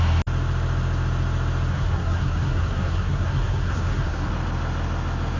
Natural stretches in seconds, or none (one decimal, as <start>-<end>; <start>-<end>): 0.0-1.7; 4.3-5.4